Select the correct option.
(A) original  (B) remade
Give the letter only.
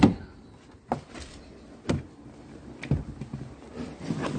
A